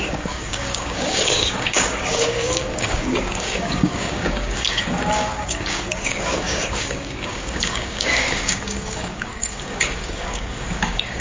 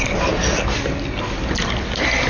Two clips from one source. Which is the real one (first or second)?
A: second